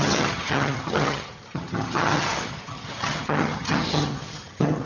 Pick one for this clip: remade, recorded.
remade